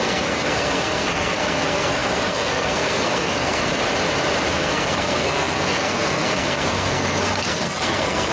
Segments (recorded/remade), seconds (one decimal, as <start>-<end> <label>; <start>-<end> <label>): 0.0-3.8 remade; 3.8-4.5 recorded; 4.5-8.3 remade